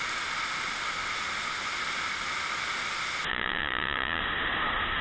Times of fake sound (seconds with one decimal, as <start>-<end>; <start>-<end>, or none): 3.3-4.2